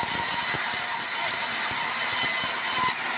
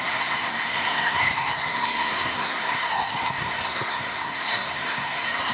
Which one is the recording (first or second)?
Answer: first